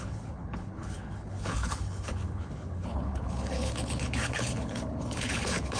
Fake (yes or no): yes